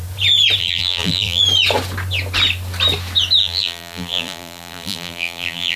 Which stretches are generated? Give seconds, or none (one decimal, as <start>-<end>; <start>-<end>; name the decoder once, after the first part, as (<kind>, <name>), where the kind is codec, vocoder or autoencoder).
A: 0.6-1.4 (vocoder, BigVGAN v2); 3.4-5.8